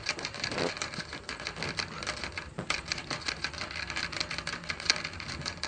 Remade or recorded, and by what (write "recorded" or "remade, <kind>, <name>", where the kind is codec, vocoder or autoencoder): recorded